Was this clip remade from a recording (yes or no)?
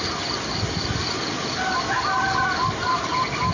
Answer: yes